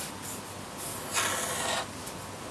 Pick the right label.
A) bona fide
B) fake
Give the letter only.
A